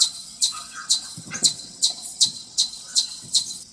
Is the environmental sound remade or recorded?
remade